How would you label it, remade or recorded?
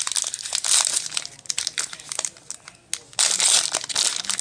recorded